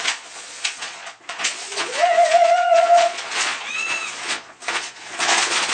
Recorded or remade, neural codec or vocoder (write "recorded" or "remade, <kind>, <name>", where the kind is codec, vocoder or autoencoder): remade, vocoder, Vocos